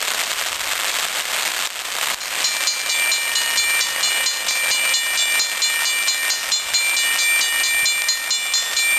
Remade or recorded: recorded